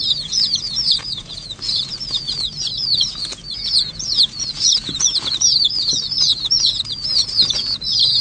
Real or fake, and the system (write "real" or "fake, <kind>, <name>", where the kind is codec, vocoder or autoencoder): fake, vocoder, Vocos